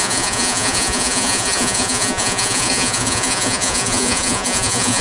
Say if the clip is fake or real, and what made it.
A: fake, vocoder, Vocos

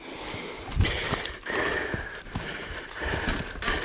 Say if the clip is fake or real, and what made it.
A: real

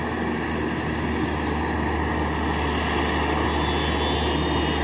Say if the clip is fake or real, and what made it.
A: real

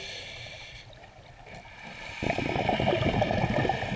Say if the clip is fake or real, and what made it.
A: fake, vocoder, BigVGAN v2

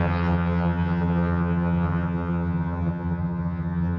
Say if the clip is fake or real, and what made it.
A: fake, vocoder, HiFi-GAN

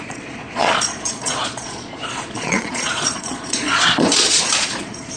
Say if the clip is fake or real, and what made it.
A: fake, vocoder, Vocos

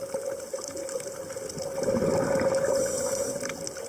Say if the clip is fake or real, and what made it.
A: real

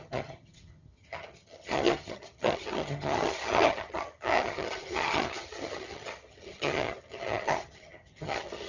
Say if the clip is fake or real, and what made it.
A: fake, vocoder, HiFi-GAN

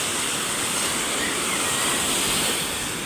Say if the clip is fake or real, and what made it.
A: real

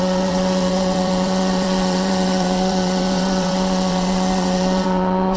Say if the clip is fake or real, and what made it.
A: fake, vocoder, WaveNeXt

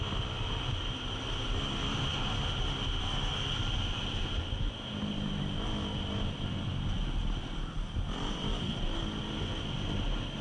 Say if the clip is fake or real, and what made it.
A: real